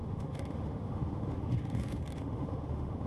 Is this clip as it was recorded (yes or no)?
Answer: no